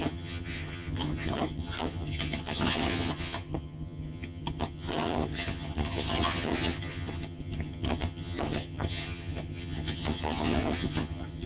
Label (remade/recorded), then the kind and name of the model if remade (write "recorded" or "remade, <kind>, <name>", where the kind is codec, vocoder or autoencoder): remade, vocoder, HiFi-GAN